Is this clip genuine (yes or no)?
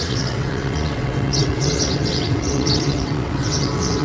no